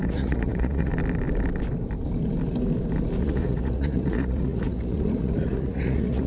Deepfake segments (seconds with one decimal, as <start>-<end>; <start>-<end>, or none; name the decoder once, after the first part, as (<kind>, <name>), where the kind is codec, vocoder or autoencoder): 0.0-0.9 (vocoder, Vocos); 3.2-6.3